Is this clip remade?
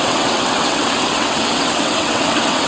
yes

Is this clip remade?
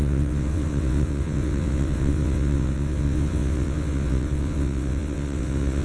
yes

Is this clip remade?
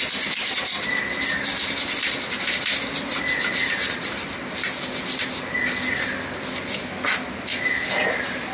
no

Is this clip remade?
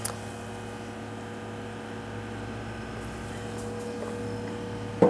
no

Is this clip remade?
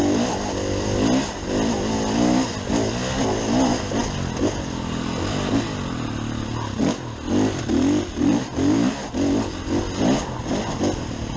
no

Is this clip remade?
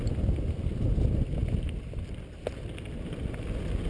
no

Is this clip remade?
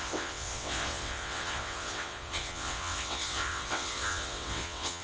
yes